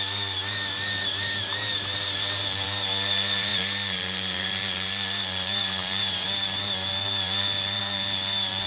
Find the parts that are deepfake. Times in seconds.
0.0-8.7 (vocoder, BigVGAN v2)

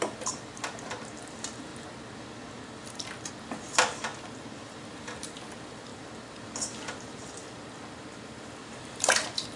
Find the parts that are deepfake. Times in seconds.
0.0-1.7 (vocoder, BigVGAN v2); 3.3-9.6

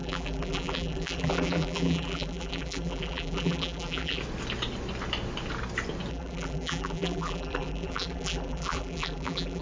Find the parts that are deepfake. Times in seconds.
0.0-4.2 (vocoder, BigVGAN v2); 6.1-9.6

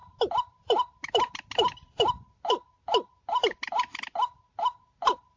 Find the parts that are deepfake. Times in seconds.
none

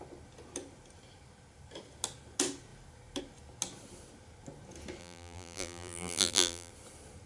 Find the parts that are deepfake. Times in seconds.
5.0-6.7 (vocoder, BigVGAN v2)

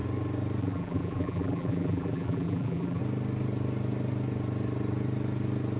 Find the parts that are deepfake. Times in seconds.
0.6-3.0 (vocoder, BigVGAN v2)

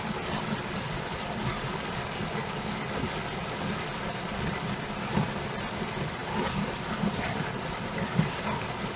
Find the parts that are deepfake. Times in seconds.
5.1-5.8 (vocoder, BigVGAN v2); 6.2-8.3